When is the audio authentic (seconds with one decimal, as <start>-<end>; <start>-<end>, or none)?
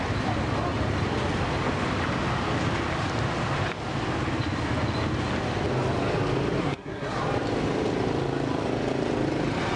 0.0-6.6; 7.2-9.8